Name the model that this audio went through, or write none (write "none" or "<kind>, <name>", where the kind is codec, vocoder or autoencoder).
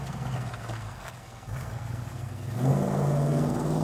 codec, SNAC